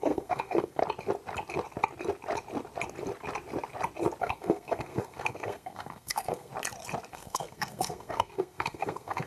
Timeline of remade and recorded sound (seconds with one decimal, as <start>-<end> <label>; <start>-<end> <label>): 0.0-0.8 remade; 0.8-4.2 recorded; 4.2-6.5 remade; 6.5-7.1 recorded; 7.1-9.3 remade